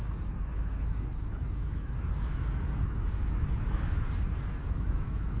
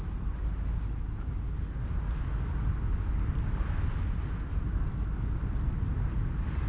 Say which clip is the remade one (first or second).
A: first